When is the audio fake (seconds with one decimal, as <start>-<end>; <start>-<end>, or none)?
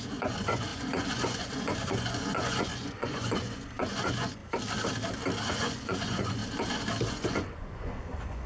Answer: 0.0-4.4; 5.5-6.4; 7.1-8.5